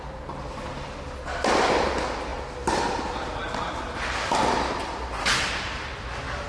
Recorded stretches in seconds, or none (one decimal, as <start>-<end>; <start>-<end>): 0.0-6.5